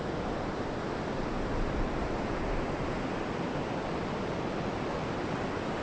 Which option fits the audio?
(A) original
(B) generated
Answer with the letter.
A